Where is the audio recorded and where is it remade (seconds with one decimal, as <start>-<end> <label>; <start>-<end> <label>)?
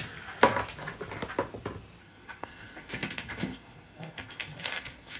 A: 0.0-2.0 recorded; 2.0-5.2 remade